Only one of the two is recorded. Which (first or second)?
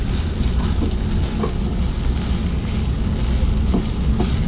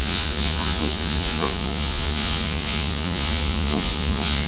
first